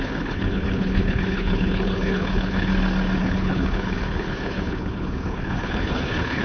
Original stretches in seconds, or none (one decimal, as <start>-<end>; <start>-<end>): 2.7-3.2